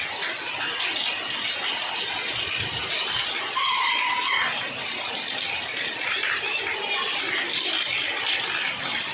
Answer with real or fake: real